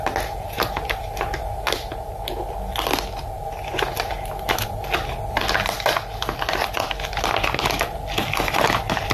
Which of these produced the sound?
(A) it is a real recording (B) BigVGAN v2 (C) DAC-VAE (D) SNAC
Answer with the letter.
A